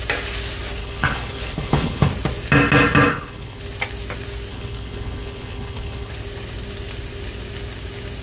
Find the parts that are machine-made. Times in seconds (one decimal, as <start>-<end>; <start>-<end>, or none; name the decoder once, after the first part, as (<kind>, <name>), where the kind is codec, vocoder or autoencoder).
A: 0.8-2.1 (codec, HILCodec); 3.1-3.6; 4.5-6.1

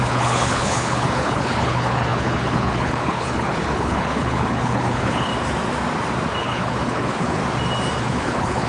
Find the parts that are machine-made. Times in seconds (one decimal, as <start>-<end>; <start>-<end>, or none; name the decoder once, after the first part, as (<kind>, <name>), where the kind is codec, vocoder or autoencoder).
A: 0.0-5.3 (codec, HILCodec); 6.4-7.4; 8.0-8.7

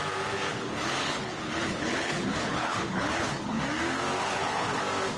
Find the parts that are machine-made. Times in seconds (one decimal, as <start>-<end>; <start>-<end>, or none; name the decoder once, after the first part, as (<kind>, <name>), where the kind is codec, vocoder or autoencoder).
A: 0.5-3.6 (codec, HILCodec); 4.2-4.8

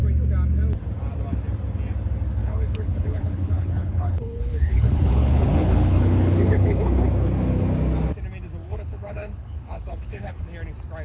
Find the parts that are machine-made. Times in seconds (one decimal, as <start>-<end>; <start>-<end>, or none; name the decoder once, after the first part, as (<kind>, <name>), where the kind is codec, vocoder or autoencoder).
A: 2.4-7.1 (codec, HILCodec); 8.6-10.5